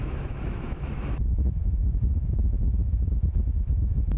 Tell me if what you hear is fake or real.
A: fake